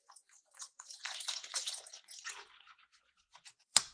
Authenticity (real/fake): fake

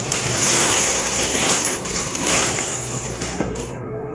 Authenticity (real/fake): fake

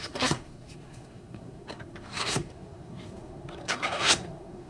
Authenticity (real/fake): fake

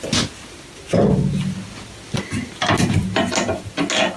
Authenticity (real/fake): real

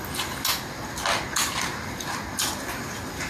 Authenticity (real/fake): real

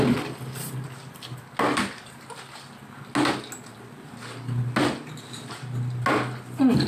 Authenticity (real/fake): real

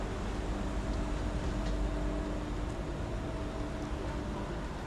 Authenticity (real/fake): real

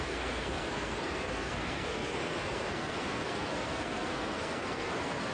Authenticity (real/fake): fake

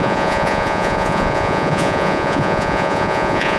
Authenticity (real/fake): fake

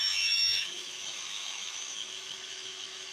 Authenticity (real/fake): fake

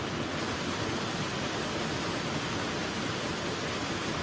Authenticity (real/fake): real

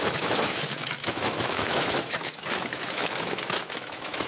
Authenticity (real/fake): fake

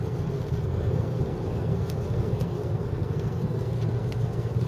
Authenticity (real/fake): fake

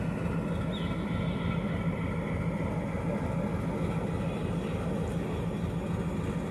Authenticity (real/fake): real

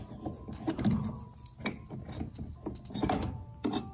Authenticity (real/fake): real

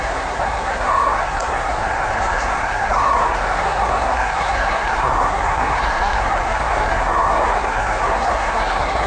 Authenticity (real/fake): fake